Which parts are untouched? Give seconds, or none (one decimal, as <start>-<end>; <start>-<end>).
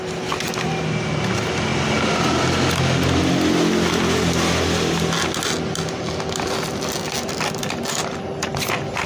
0.0-9.1